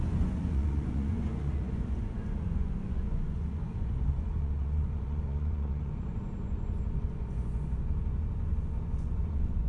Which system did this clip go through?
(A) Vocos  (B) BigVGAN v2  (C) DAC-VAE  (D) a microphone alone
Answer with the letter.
A